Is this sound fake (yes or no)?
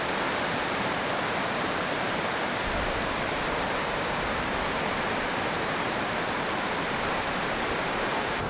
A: yes